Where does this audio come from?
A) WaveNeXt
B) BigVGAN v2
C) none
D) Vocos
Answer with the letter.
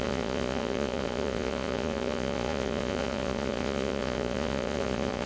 D